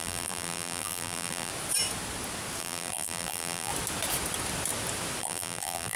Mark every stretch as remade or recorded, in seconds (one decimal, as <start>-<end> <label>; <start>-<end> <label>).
0.0-1.5 remade; 1.5-2.6 recorded; 2.6-3.7 remade; 3.7-5.2 recorded; 5.2-6.0 remade